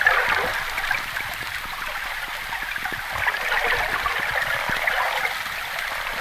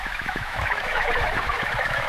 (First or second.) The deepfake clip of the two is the second